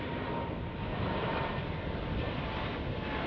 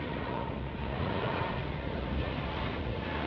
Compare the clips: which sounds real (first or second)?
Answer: first